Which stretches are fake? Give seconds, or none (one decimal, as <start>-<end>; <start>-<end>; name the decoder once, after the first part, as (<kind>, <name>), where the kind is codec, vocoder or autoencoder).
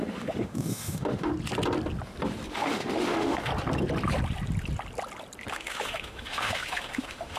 0.0-1.3 (autoencoder, DAC-VAE); 2.5-3.5; 5.5-7.4